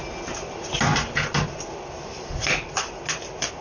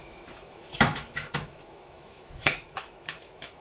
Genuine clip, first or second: first